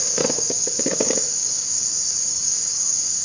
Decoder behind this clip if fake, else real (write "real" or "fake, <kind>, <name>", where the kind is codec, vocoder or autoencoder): fake, codec, DAC